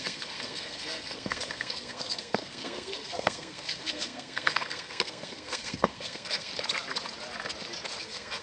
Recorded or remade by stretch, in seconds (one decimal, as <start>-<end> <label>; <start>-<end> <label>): 0.0-6.5 remade; 6.5-8.0 recorded; 8.0-8.4 remade